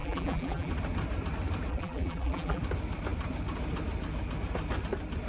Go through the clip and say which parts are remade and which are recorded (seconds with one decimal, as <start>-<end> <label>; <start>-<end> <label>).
0.0-0.7 remade; 0.7-1.7 recorded; 1.7-2.6 remade; 2.6-5.3 recorded